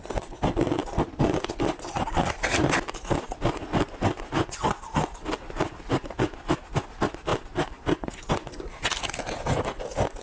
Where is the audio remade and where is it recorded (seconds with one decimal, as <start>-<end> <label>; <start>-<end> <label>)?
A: 0.0-10.2 recorded